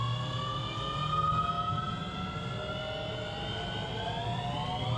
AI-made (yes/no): no